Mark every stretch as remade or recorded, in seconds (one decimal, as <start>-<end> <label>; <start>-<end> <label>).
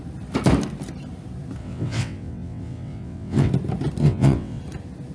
0.0-1.6 recorded; 1.6-3.5 remade; 3.5-4.0 recorded; 4.0-4.6 remade; 4.6-5.1 recorded